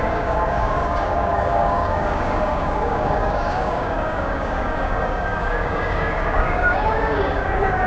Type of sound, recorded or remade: remade